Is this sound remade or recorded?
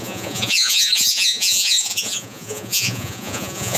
remade